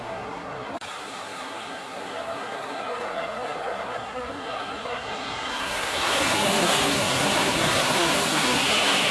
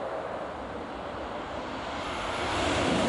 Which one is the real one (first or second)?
second